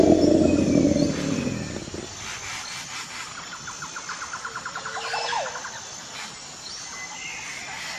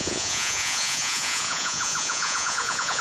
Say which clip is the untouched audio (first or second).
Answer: first